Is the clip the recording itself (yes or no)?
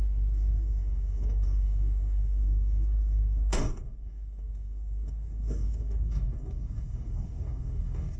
no